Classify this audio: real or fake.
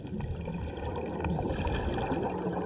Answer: real